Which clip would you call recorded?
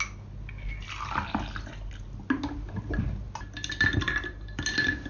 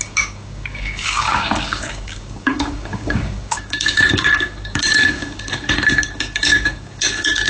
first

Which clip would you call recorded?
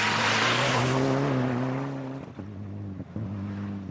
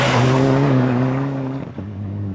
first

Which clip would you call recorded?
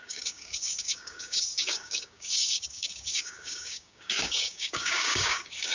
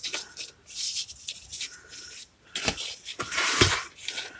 second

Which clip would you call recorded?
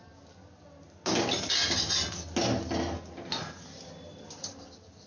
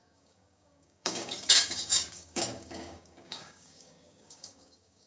first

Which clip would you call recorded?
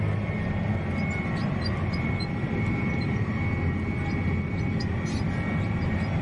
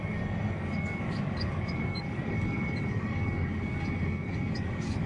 first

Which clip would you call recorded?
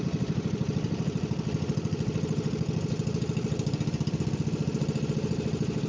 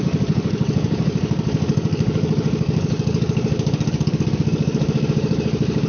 first